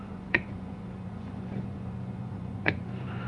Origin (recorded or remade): remade